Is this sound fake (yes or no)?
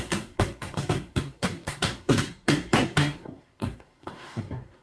yes